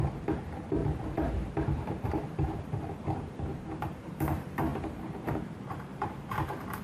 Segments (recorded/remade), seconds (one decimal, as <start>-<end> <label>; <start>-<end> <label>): 0.0-5.9 remade; 5.9-6.8 recorded